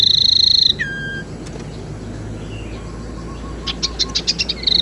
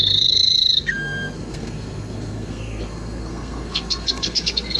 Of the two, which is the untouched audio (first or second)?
first